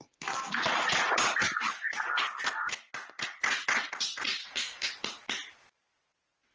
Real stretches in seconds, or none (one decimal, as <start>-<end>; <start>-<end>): 0.0-4.4; 4.9-6.5